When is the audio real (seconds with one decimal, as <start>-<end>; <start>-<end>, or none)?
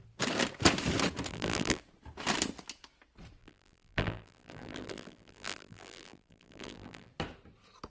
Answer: 0.0-1.3; 1.8-3.4; 7.1-7.9